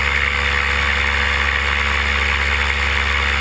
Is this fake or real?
real